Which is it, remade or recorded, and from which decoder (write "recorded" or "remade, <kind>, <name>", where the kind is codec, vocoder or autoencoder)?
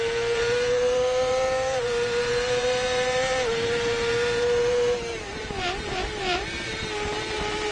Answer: remade, vocoder, BigVGAN v2